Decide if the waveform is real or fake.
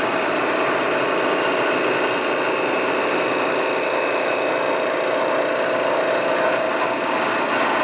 real